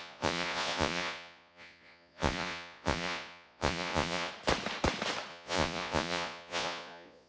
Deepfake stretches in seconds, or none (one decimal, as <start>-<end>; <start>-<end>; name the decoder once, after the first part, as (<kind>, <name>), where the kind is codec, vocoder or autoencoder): 0.0-4.3 (vocoder, Vocos); 5.3-7.3

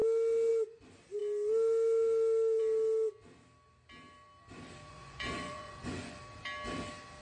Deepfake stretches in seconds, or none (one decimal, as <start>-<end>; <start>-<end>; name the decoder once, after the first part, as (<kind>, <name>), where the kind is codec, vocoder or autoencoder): 4.9-6.2 (vocoder, Vocos)